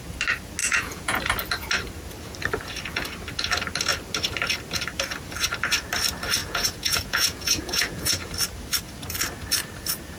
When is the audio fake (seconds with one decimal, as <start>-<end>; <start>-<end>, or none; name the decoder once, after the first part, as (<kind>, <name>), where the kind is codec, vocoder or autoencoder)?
0.6-1.2 (vocoder, Vocos); 6.4-8.3